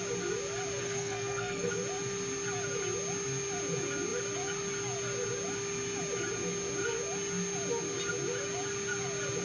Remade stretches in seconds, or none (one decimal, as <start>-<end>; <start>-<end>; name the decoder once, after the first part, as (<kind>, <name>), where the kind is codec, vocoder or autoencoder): 0.8-1.7 (codec, SNAC)